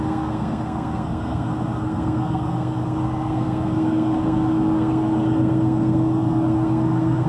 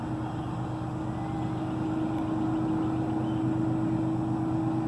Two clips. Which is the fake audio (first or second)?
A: first